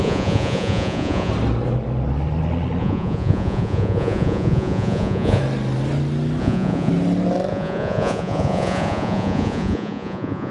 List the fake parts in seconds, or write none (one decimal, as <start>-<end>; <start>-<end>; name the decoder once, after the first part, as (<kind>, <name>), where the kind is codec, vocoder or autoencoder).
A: 0.0-1.3 (vocoder, Vocos); 2.8-5.4; 6.4-6.9; 7.5-10.5